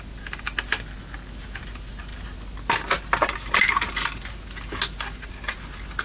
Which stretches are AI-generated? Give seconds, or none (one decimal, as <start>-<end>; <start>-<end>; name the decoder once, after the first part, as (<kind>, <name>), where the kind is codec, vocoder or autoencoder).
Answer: none